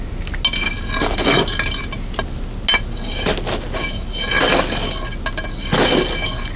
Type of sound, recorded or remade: recorded